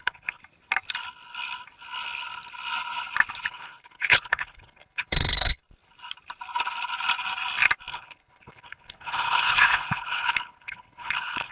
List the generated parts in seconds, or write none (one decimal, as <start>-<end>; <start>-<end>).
0.0-0.4; 3.5-5.6; 7.9-11.5